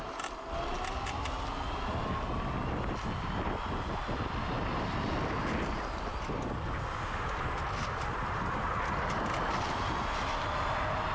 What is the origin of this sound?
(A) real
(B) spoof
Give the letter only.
A